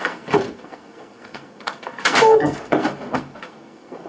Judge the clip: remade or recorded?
remade